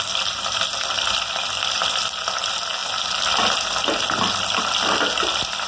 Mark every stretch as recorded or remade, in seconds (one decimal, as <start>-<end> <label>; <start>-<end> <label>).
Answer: 0.0-5.7 recorded